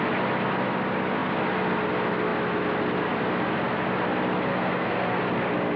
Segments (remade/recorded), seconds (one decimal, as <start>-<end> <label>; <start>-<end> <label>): 0.0-4.5 recorded; 4.5-5.2 remade; 5.2-5.8 recorded